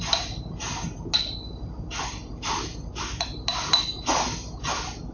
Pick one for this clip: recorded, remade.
recorded